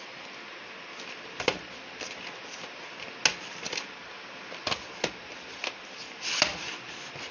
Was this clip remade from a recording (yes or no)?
no